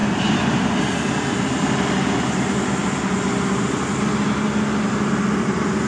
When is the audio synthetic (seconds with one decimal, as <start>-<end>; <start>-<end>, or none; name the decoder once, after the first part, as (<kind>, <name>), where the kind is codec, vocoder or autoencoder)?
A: none